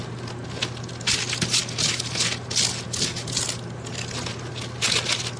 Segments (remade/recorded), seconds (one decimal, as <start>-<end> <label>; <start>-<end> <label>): 0.0-5.4 recorded